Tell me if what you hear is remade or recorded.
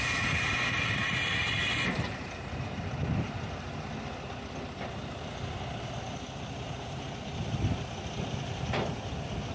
remade